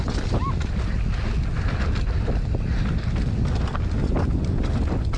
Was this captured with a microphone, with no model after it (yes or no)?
yes